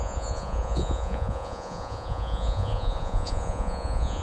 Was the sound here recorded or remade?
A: remade